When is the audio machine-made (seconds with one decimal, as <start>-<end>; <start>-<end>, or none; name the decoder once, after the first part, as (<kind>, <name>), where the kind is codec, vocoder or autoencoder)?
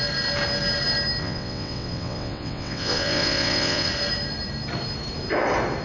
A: 1.2-3.9 (vocoder, WaveNeXt)